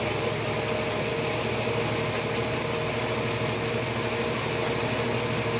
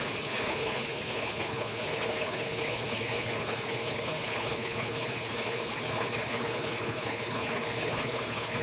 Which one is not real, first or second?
second